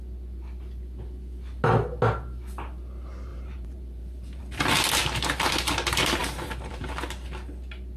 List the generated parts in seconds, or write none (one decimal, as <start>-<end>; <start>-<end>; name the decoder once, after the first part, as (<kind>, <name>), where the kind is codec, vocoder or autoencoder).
3.3-4.4 (vocoder, BigVGAN v2); 6.2-6.8